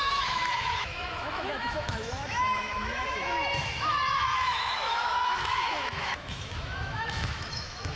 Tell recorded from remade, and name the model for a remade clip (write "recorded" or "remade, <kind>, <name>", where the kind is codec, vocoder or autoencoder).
remade, autoencoder, DAC-VAE